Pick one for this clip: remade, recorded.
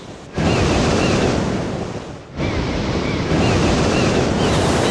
recorded